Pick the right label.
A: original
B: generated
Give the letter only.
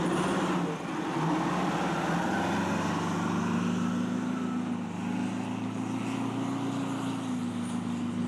A